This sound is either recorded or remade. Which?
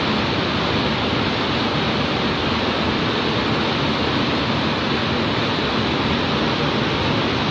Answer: recorded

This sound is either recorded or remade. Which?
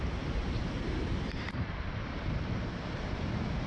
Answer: remade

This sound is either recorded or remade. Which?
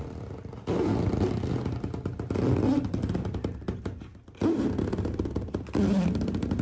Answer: recorded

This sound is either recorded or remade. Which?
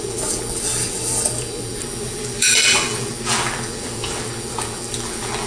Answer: remade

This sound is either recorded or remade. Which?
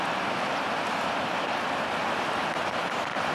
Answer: remade